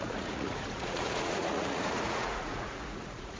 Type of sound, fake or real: fake